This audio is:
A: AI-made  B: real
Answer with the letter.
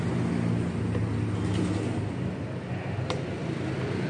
B